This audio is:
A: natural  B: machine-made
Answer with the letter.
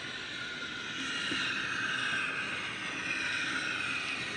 A